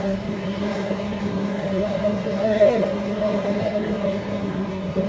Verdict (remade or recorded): remade